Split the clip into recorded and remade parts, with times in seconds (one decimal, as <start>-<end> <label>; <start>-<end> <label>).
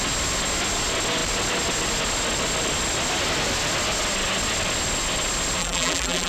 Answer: 0.0-5.6 recorded; 5.6-6.3 remade